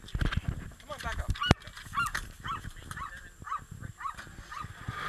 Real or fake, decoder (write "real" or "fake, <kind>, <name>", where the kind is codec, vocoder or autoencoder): real